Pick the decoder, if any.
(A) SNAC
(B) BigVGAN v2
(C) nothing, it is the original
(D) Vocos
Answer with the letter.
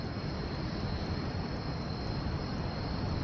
C